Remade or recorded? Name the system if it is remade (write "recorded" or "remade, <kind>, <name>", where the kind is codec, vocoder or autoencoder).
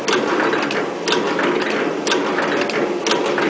recorded